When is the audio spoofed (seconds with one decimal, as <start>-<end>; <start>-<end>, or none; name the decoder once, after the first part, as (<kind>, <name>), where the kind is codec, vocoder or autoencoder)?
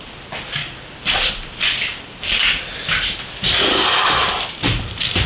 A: 0.6-1.3 (vocoder, BigVGAN v2)